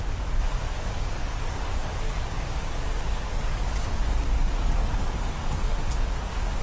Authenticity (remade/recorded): remade